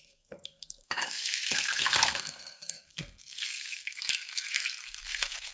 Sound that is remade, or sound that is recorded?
remade